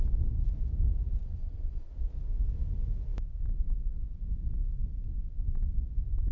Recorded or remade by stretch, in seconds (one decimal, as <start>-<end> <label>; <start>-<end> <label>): 0.0-1.2 recorded; 1.2-1.9 remade; 1.9-6.3 recorded